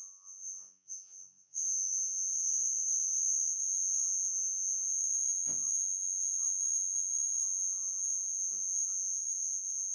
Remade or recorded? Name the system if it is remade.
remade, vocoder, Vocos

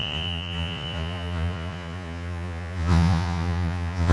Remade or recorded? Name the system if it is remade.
remade, vocoder, Vocos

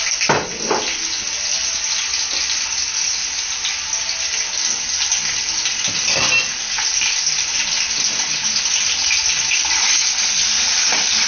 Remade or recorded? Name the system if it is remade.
recorded